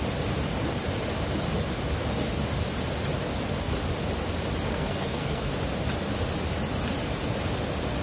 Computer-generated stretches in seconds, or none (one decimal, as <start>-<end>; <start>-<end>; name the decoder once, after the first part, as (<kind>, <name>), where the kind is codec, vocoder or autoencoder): 4.7-5.5 (codec, SNAC)